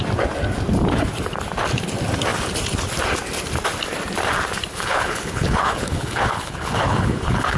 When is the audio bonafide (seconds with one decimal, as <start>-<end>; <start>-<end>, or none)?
0.0-4.7